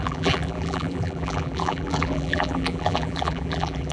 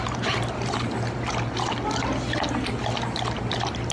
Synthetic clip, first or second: first